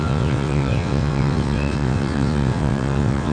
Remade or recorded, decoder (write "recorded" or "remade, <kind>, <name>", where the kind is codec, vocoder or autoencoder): remade, vocoder, WaveNeXt